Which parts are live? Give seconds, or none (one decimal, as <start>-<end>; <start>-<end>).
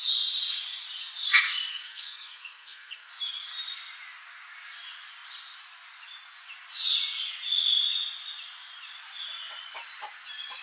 0.0-1.7; 3.1-10.6